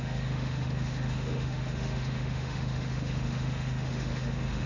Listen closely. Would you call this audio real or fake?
fake